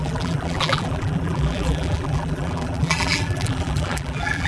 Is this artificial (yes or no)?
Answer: yes